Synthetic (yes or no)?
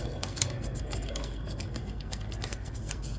yes